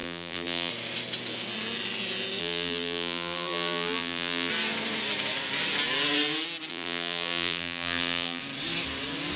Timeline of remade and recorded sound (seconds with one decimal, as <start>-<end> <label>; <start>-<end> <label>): 0.0-0.7 remade; 0.7-2.4 recorded; 2.4-4.5 remade; 4.5-6.7 recorded; 6.7-8.4 remade; 8.4-9.4 recorded